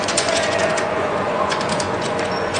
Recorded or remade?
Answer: remade